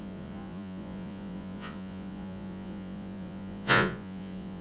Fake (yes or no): yes